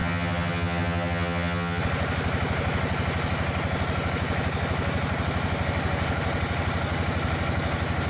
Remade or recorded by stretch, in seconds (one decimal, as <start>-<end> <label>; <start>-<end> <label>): 0.0-1.8 remade; 1.8-8.1 recorded